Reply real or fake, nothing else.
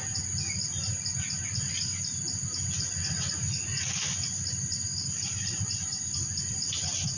real